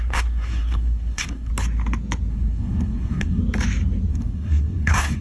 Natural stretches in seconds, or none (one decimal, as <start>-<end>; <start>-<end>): 1.5-2.3; 3.4-4.1